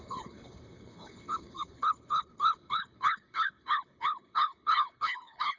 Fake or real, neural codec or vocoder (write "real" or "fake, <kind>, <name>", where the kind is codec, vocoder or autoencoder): fake, codec, HILCodec